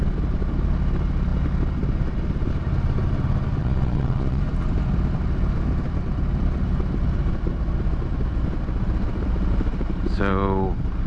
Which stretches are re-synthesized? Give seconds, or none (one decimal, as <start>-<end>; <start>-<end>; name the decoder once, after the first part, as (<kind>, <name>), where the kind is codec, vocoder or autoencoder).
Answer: 3.6-4.4 (vocoder, Vocos)